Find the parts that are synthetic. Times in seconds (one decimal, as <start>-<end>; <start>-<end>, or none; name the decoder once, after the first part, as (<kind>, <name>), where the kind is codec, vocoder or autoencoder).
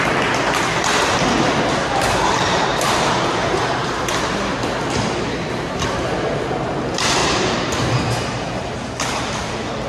2.7-4.1 (vocoder, BigVGAN v2); 7.2-8.9